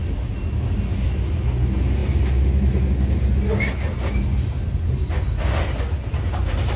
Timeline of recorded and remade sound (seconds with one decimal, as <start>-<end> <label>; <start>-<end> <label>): 0.0-6.8 recorded